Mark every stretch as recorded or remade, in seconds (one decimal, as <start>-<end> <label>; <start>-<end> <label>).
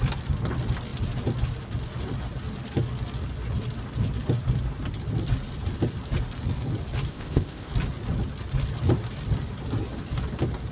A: 0.0-7.1 recorded; 7.1-7.7 remade; 7.7-10.7 recorded